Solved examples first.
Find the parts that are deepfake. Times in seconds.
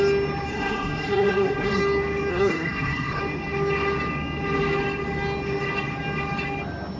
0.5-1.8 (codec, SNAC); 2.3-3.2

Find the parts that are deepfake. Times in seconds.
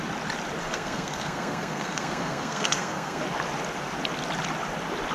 0.6-3.2 (codec, SNAC)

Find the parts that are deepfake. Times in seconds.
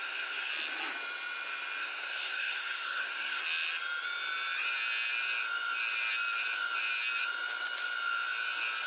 0.0-0.5 (codec, SNAC); 1.8-3.4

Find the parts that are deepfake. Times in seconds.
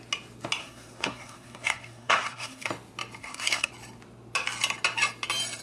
0.6-2.7 (codec, SNAC); 3.2-3.7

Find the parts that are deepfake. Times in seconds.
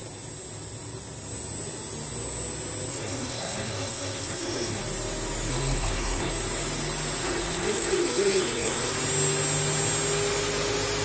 2.9-4.8 (codec, SNAC); 5.5-6.3; 7.2-8.9